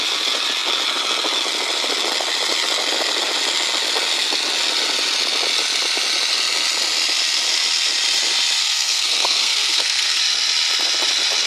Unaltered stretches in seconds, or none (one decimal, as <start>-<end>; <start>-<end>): 0.0-8.6; 10.2-11.5